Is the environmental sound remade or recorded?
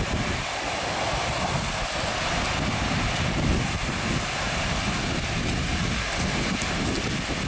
recorded